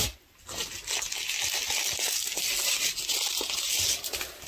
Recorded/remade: recorded